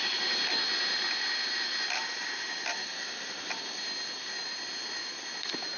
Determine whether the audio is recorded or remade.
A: recorded